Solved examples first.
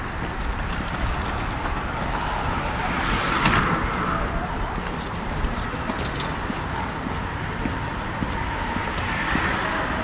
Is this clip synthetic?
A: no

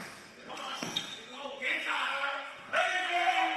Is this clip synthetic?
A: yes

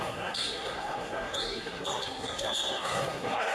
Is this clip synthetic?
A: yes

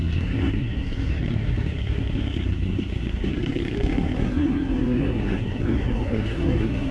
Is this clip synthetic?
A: yes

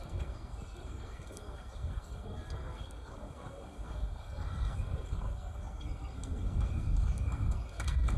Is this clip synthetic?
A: yes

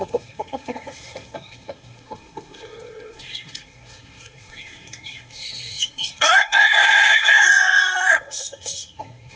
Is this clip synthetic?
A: yes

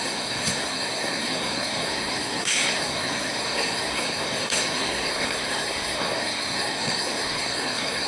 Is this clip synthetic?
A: yes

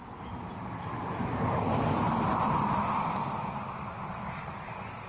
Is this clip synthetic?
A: no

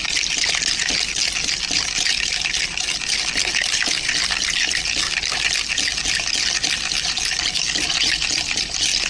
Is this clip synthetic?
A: no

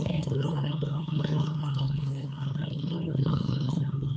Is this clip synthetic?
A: yes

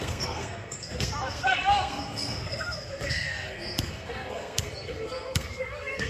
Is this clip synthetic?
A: yes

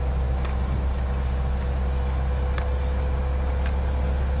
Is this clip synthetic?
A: no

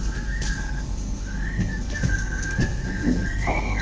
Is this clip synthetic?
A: yes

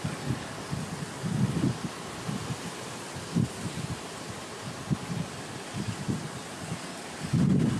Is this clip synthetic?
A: no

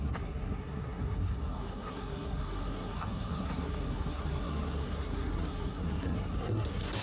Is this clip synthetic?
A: yes